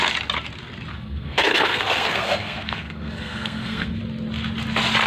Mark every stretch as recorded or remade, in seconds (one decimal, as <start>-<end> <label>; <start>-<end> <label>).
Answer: 0.0-0.9 recorded; 0.9-4.0 remade; 4.0-5.1 recorded